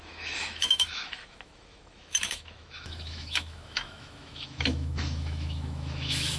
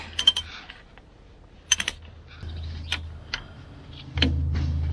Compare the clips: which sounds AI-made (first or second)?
first